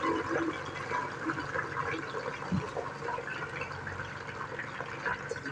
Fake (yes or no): no